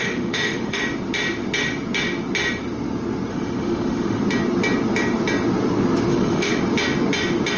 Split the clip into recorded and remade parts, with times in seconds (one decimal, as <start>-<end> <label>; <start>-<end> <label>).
0.0-0.8 remade; 0.8-3.3 recorded; 3.3-4.2 remade; 4.2-6.1 recorded; 6.1-6.6 remade; 6.6-7.6 recorded